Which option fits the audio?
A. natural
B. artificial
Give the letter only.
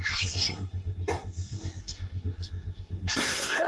B